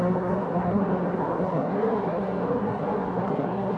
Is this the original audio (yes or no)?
no